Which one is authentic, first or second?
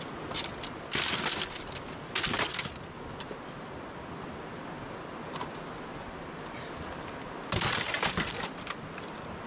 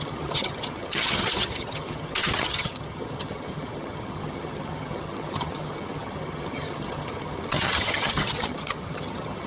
first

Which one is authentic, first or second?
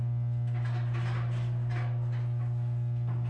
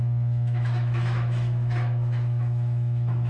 first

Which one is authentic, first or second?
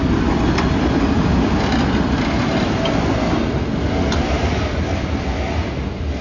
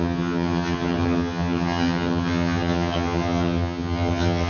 first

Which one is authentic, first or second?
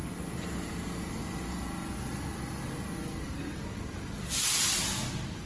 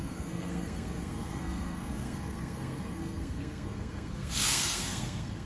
first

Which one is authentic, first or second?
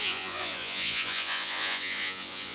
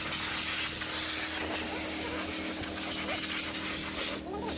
second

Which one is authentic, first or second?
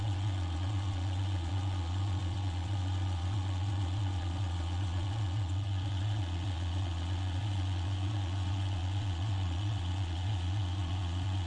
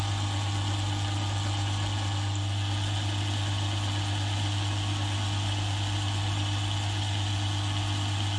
second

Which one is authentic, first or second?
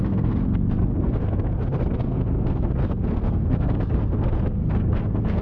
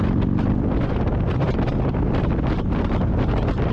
second